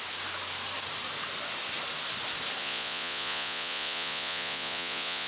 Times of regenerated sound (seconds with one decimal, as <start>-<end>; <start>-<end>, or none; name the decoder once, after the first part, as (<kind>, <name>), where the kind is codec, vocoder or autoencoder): 2.6-5.3 (vocoder, Vocos)

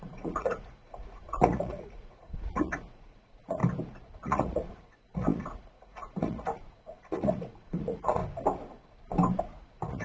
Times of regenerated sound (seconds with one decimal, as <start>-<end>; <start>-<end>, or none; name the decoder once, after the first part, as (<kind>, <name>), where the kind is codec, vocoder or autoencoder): 0.0-3.6 (vocoder, Vocos); 4.2-8.2; 9.4-10.0

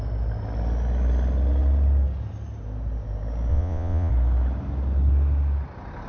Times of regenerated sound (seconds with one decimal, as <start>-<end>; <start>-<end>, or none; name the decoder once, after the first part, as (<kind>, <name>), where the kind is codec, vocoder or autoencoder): 3.5-4.1 (vocoder, Vocos)

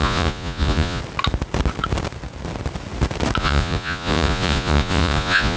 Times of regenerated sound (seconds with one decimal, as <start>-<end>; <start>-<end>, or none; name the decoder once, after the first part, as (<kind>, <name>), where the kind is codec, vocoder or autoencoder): 0.0-1.0 (vocoder, Vocos); 3.4-5.6

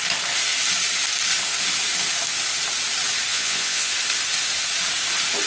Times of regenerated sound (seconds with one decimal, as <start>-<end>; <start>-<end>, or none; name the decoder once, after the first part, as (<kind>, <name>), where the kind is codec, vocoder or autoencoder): 3.3-3.9 (vocoder, Vocos)

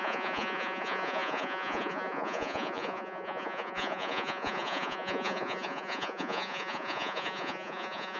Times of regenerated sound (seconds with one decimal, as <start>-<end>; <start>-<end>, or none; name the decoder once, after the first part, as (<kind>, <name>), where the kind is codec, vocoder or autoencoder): 0.0-8.2 (vocoder, Vocos)

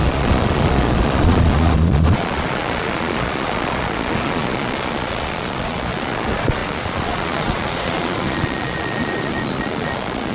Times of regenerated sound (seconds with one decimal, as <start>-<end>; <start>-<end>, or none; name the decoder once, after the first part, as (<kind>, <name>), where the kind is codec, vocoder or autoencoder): 0.0-10.3 (vocoder, Vocos)